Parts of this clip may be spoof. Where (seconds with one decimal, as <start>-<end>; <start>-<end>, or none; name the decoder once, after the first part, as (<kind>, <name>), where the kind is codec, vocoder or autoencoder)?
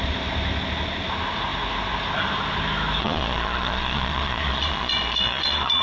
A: 3.0-5.8 (vocoder, Vocos)